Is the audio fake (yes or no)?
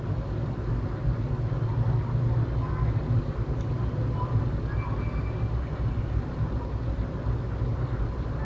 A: no